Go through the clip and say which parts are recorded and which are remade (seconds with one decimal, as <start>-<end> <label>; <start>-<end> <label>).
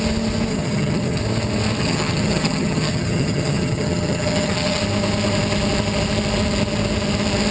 0.0-0.5 recorded; 0.5-1.2 remade; 1.2-1.8 recorded; 1.8-4.8 remade; 4.8-7.5 recorded